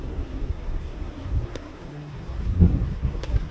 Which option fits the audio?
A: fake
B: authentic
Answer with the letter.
A